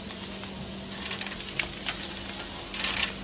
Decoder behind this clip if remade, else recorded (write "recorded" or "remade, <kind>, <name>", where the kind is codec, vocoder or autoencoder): recorded